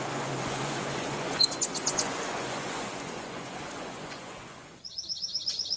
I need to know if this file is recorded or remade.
remade